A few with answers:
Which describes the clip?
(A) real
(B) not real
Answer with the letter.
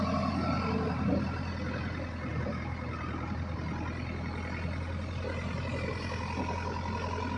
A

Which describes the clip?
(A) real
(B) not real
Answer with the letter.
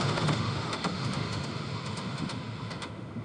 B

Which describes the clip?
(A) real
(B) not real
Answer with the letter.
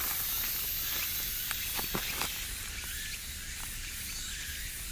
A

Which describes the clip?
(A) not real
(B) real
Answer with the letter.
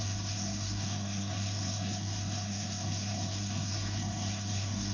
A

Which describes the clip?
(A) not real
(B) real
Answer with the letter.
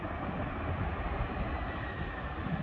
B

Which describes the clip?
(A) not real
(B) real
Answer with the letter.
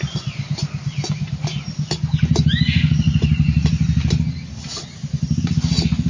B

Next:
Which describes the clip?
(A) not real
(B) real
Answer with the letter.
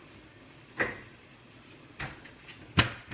B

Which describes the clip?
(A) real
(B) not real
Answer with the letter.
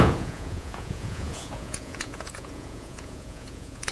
B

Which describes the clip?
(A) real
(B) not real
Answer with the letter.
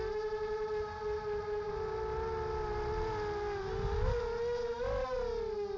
A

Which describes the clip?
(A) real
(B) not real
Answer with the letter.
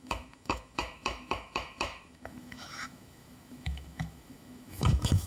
B